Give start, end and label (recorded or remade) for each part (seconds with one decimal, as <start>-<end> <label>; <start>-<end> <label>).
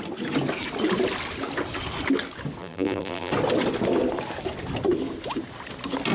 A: 0.0-2.6 recorded; 2.6-3.3 remade; 3.3-6.1 recorded